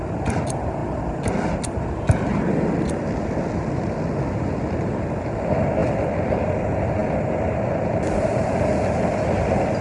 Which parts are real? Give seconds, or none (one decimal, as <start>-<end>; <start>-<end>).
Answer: 0.0-9.8